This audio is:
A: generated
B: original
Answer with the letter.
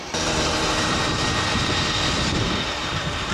A